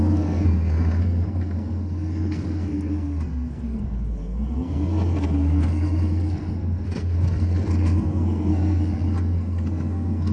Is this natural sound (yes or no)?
no